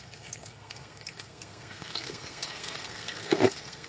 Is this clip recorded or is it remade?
remade